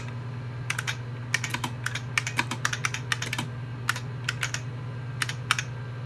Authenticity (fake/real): real